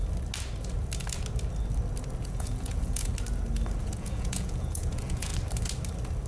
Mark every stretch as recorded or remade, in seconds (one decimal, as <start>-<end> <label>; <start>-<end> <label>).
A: 0.0-2.2 recorded; 2.2-3.1 remade; 3.1-3.8 recorded; 3.8-5.3 remade; 5.3-6.3 recorded